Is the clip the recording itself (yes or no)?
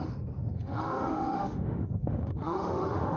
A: no